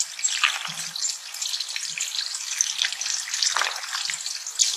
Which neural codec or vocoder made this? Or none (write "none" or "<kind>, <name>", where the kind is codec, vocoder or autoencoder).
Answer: none